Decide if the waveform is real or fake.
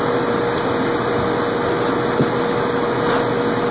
real